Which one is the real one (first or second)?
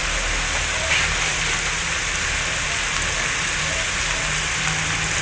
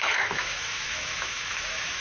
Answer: first